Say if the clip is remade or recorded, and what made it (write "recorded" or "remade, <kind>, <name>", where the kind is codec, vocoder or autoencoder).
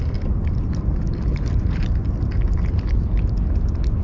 recorded